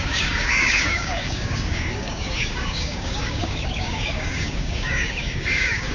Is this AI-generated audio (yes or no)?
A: yes